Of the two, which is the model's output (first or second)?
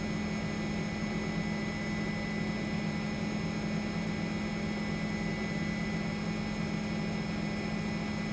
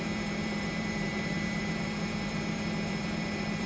second